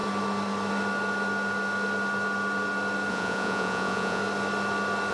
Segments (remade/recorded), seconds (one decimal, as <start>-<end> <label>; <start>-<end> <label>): 0.0-3.1 recorded; 3.1-4.2 remade; 4.2-5.1 recorded